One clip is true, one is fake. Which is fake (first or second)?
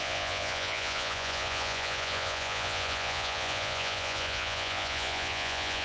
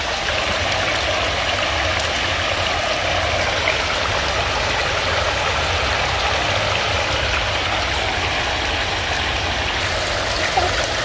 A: first